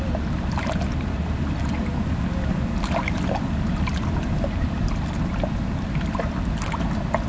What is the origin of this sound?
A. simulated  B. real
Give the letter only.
B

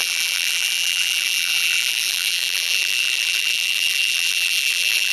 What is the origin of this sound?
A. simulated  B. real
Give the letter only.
A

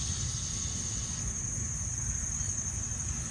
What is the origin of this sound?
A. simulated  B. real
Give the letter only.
B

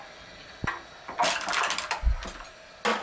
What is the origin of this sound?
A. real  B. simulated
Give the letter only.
A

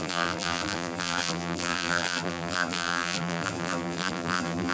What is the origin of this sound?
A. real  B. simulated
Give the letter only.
B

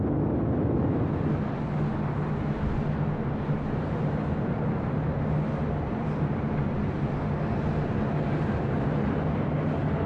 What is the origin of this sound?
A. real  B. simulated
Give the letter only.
A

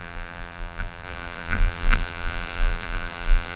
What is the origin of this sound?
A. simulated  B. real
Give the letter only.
A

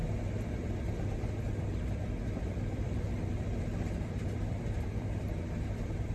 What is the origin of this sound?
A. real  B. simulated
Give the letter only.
B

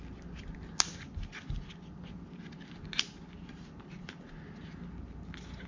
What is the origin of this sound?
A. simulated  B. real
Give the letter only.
B